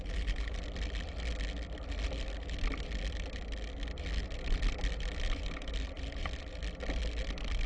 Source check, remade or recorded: recorded